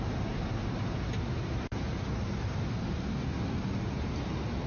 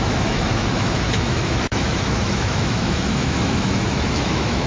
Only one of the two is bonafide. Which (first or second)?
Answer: first